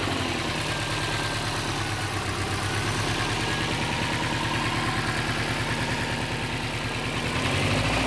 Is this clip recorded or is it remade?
recorded